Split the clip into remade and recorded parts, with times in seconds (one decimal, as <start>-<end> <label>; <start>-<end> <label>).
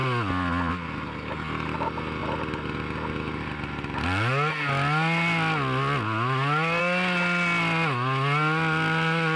0.0-9.4 recorded